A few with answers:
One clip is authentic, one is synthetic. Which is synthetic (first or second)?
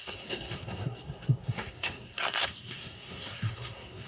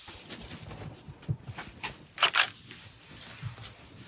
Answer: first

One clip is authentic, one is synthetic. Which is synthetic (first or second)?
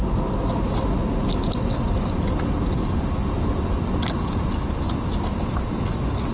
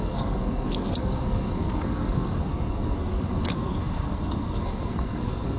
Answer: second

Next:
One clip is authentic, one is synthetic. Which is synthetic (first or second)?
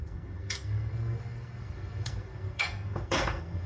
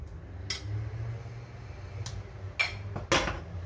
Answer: first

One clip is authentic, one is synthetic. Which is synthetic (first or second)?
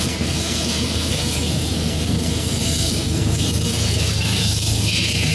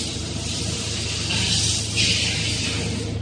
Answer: first